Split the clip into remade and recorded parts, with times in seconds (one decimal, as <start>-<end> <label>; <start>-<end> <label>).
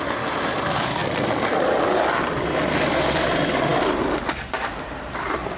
0.0-3.7 remade; 3.7-4.7 recorded; 4.7-5.6 remade